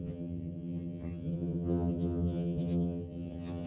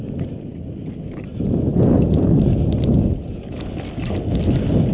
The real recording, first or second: second